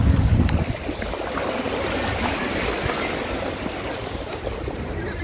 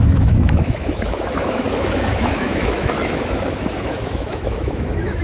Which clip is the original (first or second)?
first